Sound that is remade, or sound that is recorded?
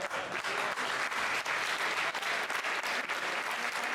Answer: recorded